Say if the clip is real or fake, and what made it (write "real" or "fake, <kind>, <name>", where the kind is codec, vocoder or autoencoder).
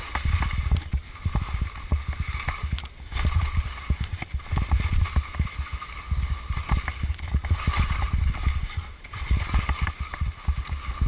real